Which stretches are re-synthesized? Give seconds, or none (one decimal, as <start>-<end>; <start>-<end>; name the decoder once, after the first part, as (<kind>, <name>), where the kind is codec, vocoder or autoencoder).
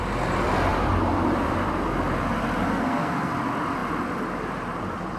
2.7-3.3 (codec, SNAC)